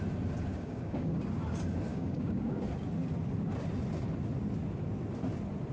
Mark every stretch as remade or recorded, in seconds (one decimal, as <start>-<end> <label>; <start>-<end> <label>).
0.0-0.5 recorded; 0.5-1.2 remade; 1.2-1.9 recorded; 1.9-2.6 remade; 2.6-5.7 recorded